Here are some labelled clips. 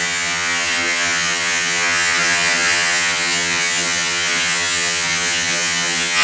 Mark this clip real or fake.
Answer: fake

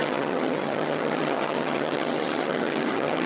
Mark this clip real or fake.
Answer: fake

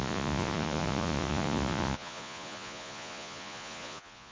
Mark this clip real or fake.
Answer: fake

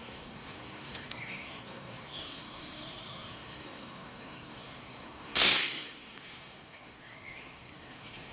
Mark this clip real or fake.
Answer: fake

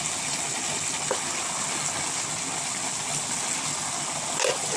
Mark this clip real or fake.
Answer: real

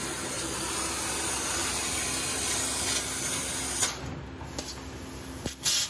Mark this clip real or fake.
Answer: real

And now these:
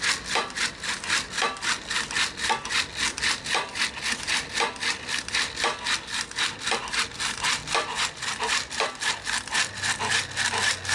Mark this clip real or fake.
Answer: real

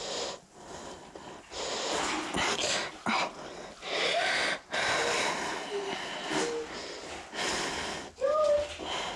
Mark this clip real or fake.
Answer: real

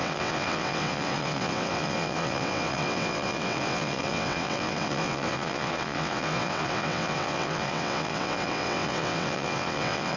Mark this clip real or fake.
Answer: fake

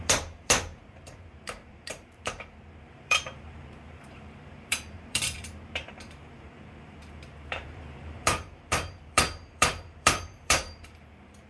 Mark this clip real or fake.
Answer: fake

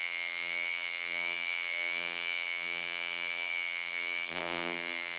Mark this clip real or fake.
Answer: fake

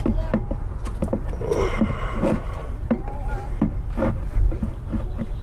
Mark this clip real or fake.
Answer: real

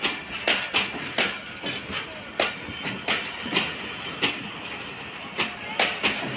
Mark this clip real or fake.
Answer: real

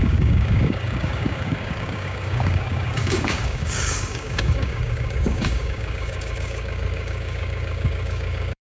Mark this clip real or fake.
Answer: fake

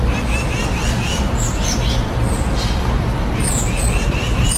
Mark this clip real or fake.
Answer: real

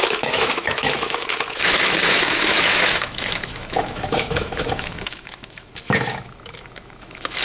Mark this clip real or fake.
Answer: fake